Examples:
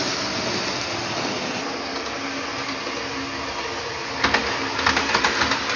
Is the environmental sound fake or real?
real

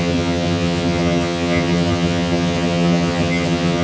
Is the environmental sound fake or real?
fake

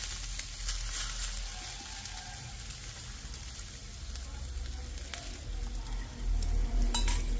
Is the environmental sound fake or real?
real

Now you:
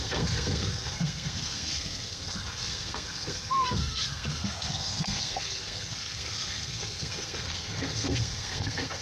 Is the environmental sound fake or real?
fake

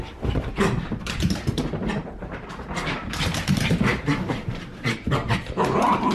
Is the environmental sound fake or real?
fake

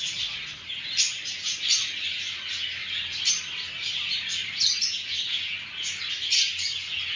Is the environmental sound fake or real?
real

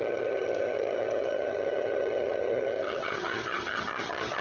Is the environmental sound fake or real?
fake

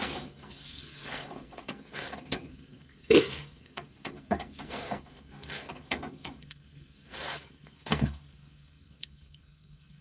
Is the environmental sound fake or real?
fake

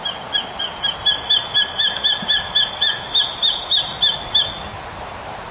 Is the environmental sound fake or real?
real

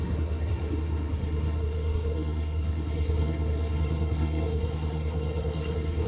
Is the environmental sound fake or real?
fake